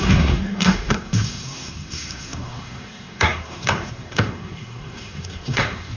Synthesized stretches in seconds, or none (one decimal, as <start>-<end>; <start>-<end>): 0.0-6.0